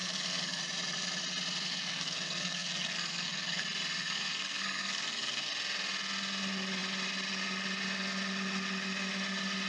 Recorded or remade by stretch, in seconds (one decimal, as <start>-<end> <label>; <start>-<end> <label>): 0.0-0.6 remade; 0.6-1.7 recorded; 1.7-3.6 remade; 3.6-4.0 recorded; 4.0-5.5 remade; 5.5-9.7 recorded